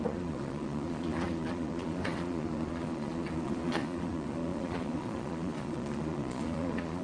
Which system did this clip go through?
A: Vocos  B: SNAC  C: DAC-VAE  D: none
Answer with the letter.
A